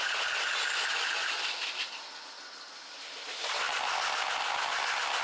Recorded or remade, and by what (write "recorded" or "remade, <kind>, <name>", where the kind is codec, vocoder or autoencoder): recorded